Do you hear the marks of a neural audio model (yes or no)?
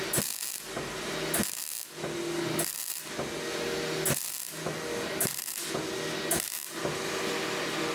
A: no